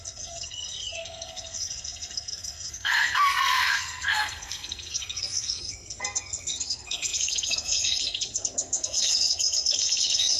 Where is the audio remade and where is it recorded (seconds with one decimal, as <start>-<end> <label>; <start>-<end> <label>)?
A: 0.0-10.4 remade